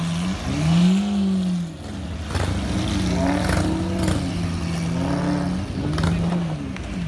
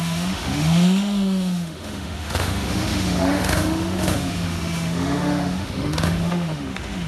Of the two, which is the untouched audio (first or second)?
first